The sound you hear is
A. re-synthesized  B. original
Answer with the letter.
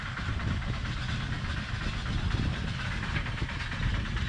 B